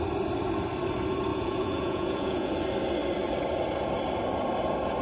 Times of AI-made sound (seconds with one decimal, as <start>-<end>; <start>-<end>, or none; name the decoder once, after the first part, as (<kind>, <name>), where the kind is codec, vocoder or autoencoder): 1.3-2.5 (vocoder, Vocos)